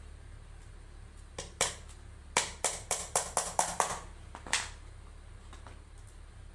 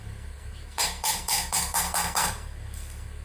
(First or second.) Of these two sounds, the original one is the first